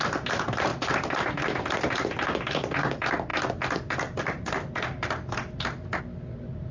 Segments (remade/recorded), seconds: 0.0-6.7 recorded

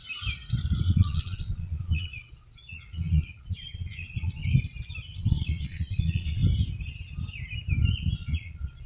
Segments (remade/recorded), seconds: 0.0-0.9 recorded; 0.9-4.4 remade; 4.4-5.2 recorded; 5.2-6.4 remade; 6.4-8.2 recorded; 8.2-8.9 remade

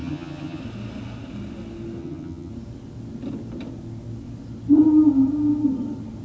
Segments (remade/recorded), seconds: 0.0-0.6 remade; 0.6-2.0 recorded; 2.0-2.5 remade; 2.5-6.2 recorded

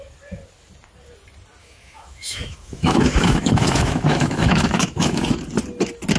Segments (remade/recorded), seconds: 0.0-1.6 recorded; 1.6-5.3 remade; 5.3-6.2 recorded

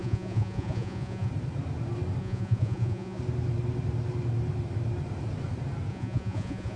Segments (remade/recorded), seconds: 0.0-1.3 remade; 1.3-2.2 recorded; 2.2-3.2 remade; 3.2-5.9 recorded; 5.9-6.8 remade